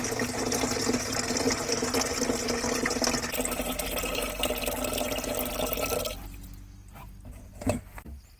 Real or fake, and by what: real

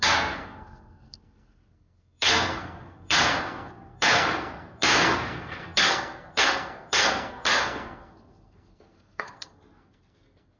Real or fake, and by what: fake, codec, SNAC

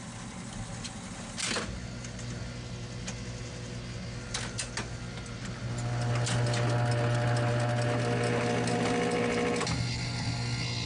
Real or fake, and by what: real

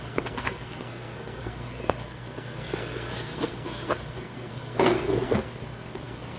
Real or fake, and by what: fake, codec, SNAC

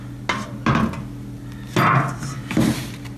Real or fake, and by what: real